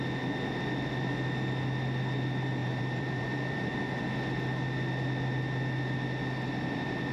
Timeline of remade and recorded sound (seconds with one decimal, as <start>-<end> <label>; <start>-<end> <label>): 0.0-2.6 recorded; 2.6-3.8 remade; 3.8-7.1 recorded